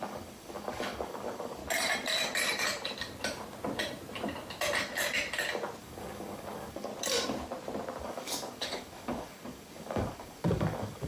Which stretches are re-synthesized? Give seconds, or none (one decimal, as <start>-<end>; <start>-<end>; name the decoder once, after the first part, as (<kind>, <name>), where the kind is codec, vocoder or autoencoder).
0.0-1.6 (codec, DAC); 5.8-6.9; 8.0-11.1